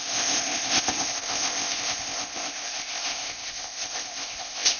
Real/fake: fake